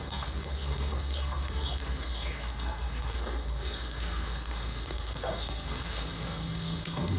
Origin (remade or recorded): remade